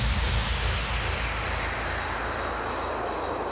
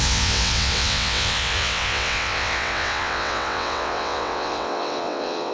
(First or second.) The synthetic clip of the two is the second